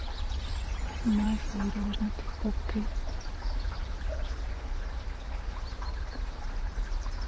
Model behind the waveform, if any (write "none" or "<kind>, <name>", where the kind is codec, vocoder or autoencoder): vocoder, BigVGAN v2